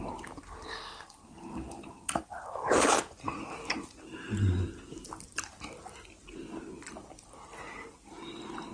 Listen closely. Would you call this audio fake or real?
real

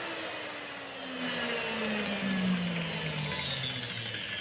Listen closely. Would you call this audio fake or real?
real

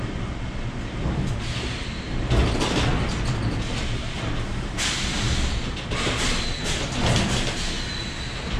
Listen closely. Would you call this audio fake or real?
real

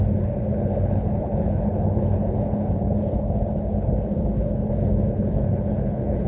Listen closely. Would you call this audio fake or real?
fake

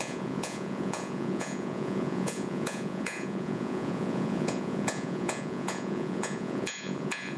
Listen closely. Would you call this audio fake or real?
fake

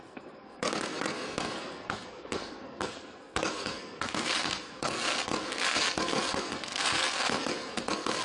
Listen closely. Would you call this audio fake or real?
fake